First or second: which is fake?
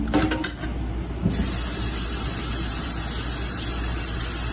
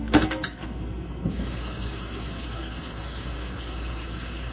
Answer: second